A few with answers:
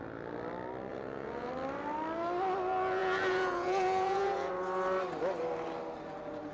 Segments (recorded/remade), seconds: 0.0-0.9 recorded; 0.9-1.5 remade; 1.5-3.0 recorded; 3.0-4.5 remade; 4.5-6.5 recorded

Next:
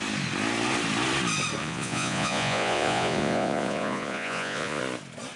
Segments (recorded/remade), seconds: 0.0-1.6 recorded; 1.6-4.8 remade; 4.8-5.4 recorded

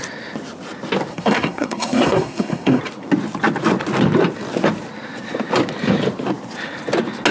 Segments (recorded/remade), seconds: 0.0-1.1 recorded; 1.1-2.8 remade; 2.8-7.3 recorded

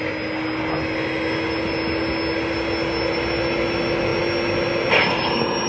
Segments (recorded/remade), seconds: 0.0-5.7 recorded